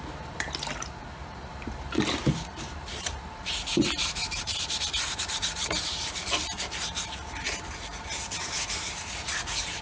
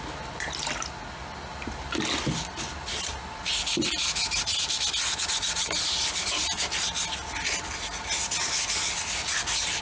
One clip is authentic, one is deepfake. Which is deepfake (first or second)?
first